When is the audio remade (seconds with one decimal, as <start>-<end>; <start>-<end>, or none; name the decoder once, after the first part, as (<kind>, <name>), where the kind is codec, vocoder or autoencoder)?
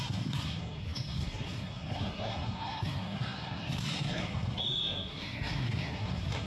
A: 0.0-6.5 (codec, SNAC)